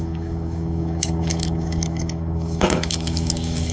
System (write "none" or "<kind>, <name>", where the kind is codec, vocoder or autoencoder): codec, DAC